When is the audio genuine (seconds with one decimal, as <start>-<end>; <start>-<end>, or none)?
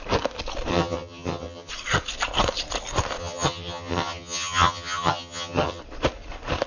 0.0-0.7; 1.7-3.2; 5.8-6.7